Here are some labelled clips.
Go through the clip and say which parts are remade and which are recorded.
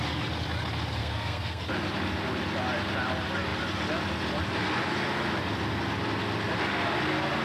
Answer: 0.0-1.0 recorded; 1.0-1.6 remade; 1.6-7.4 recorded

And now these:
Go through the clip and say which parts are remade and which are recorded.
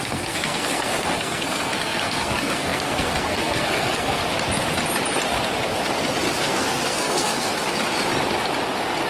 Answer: 0.0-4.2 remade; 4.2-6.4 recorded; 6.4-7.5 remade; 7.5-9.1 recorded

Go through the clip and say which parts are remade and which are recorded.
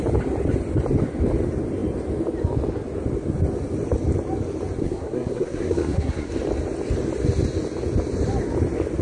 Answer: 0.0-4.8 recorded; 4.8-6.3 remade; 6.3-9.0 recorded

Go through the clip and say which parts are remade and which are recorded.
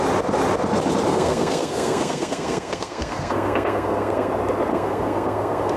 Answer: 0.0-1.1 recorded; 1.1-4.3 remade; 4.3-4.7 recorded; 4.7-5.8 remade